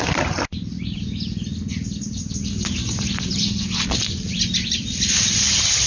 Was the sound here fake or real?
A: real